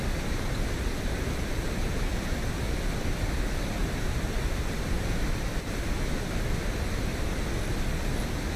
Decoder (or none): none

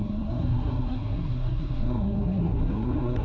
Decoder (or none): codec, SNAC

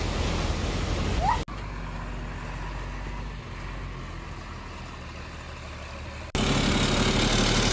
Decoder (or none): none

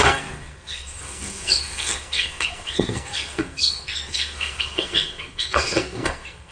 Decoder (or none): codec, SNAC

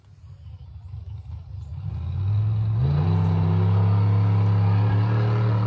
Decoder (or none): none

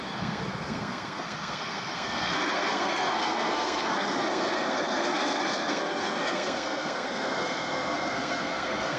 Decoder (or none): codec, SNAC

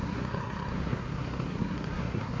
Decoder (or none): codec, SNAC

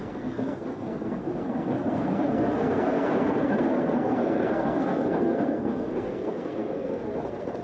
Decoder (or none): codec, SNAC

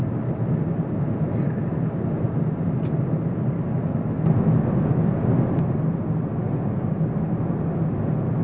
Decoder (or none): none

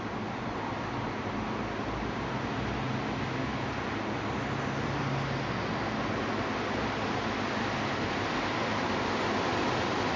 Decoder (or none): none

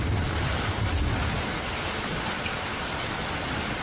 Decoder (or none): none